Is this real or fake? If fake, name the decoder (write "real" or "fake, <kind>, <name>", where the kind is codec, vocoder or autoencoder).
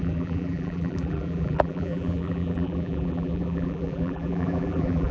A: fake, vocoder, BigVGAN v2